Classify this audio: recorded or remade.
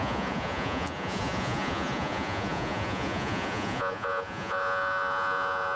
remade